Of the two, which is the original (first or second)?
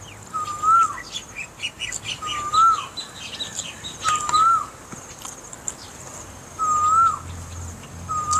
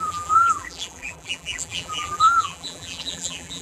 first